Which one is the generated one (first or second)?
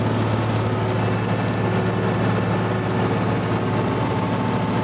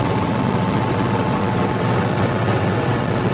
second